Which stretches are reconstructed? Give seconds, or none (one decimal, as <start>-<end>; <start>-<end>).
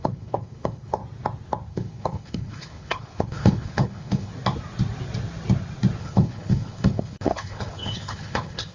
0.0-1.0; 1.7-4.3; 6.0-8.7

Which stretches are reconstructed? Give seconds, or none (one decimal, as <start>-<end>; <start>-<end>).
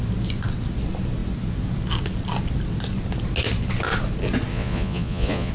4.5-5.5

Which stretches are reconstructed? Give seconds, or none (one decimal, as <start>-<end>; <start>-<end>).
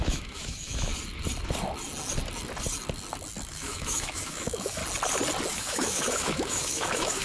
0.0-0.9; 3.5-4.8; 5.5-7.2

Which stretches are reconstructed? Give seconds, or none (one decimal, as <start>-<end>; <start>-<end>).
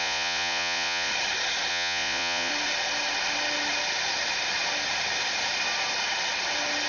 0.0-1.1; 1.7-2.5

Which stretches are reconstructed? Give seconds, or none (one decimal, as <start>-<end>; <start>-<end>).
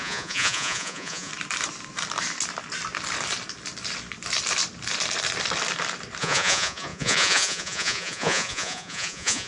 0.0-1.3; 6.2-9.5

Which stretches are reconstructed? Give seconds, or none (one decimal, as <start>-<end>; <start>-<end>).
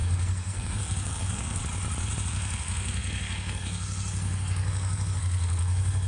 0.0-1.6; 2.3-6.1